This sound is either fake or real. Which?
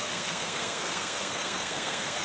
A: fake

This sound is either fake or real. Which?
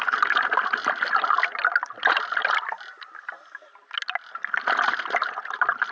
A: real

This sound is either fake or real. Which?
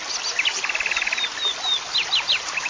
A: real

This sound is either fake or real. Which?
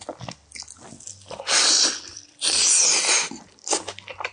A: real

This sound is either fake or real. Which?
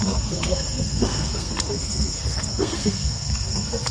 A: fake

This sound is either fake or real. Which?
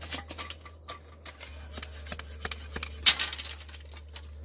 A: real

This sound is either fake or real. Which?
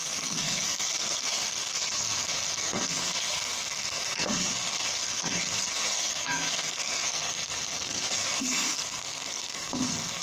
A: fake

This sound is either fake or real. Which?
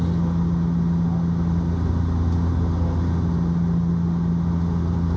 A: real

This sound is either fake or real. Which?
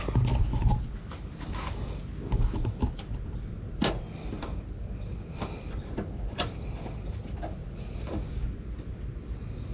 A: real